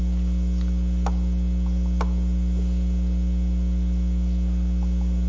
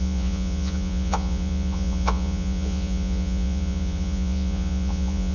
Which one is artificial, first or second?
second